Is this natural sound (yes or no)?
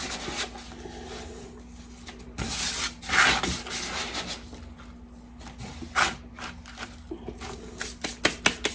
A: yes